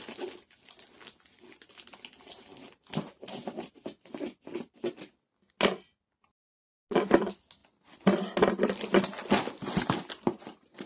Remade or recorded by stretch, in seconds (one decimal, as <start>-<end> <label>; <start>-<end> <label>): 0.0-10.9 recorded